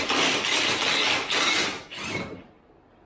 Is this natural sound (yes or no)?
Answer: yes